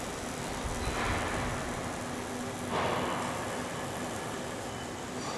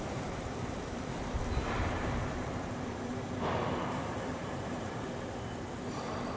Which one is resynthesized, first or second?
second